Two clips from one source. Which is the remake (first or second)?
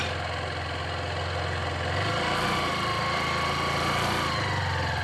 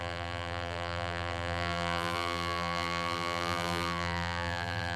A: second